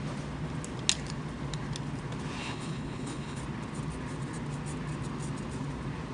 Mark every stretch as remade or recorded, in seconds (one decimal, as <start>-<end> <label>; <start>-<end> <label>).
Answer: 0.0-2.4 recorded; 2.4-3.4 remade; 3.4-6.1 recorded